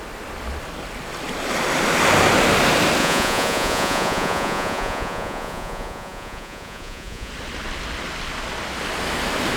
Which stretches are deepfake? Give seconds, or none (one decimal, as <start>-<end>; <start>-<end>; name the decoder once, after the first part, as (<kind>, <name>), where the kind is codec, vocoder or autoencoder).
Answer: 3.0-7.3 (vocoder, Vocos)